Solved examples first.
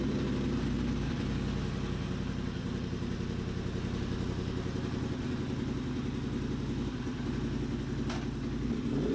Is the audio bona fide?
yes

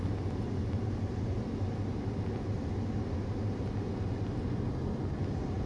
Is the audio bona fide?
yes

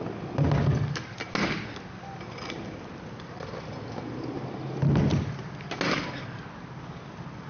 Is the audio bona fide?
yes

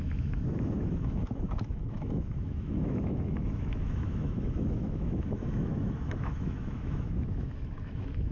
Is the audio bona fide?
no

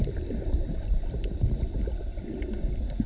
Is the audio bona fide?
yes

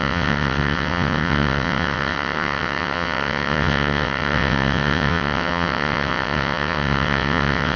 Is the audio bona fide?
no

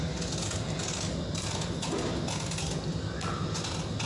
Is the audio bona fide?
yes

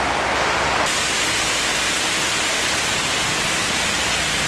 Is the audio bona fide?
yes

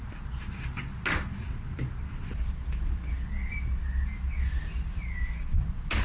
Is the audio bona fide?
yes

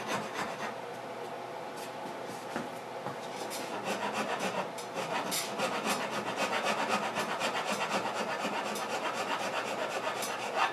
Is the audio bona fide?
yes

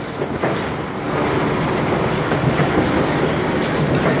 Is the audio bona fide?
yes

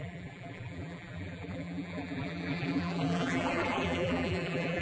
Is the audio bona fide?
no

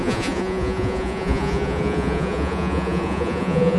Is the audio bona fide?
no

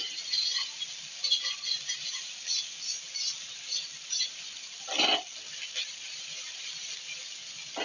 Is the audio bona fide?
yes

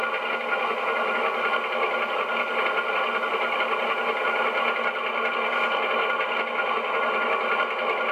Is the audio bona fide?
yes